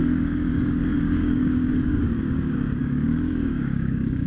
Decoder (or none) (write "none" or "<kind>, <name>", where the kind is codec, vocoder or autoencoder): codec, DAC